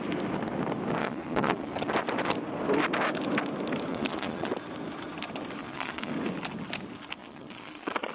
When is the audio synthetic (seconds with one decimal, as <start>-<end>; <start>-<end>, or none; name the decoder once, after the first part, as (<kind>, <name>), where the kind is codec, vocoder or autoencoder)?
1.0-1.9 (vocoder, Vocos); 3.9-4.5; 5.6-6.1; 7.2-8.1